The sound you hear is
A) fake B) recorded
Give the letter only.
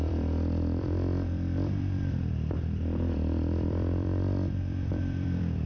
A